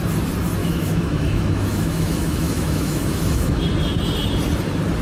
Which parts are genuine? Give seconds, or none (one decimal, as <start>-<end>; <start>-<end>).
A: 0.0-0.6; 3.6-5.0